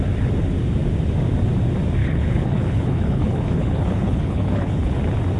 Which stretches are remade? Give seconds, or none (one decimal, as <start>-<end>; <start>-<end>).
2.0-5.0